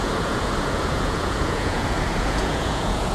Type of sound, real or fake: fake